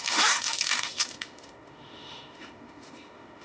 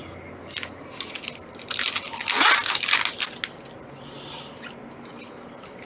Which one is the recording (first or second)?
second